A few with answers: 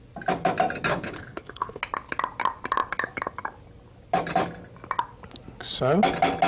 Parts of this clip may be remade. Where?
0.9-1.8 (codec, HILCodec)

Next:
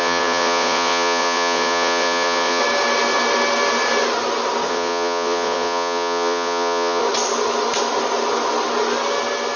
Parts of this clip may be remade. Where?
0.0-2.6 (vocoder, Vocos); 4.7-7.0

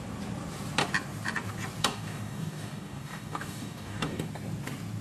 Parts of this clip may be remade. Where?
1.8-4.3 (codec, DAC)